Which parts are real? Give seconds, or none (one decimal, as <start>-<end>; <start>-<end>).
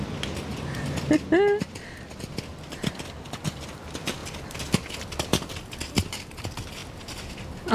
0.0-7.7